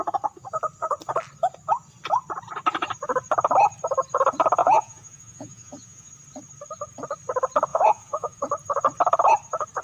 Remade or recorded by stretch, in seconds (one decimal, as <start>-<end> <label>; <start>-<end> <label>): 0.0-4.6 recorded; 4.6-6.1 remade; 6.1-7.7 recorded; 7.7-8.4 remade; 8.4-9.8 recorded